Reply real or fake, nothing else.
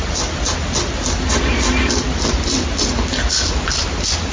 real